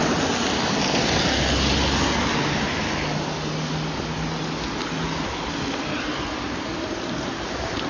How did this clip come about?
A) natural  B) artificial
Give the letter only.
A